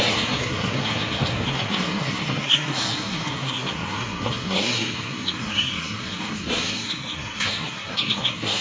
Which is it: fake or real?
fake